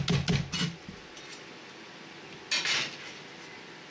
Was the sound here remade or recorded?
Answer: recorded